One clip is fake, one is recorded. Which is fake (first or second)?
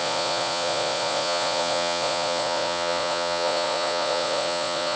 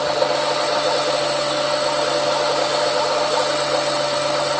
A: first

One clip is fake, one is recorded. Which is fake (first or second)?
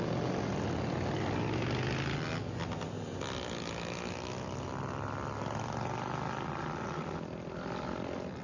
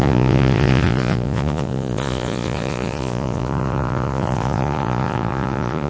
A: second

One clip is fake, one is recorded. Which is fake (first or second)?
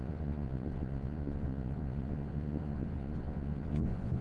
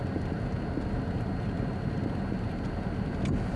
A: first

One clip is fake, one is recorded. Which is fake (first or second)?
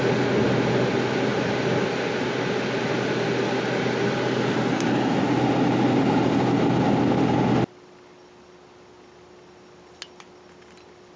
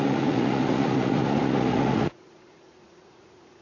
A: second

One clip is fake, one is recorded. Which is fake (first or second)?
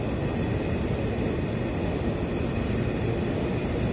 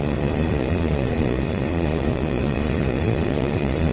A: second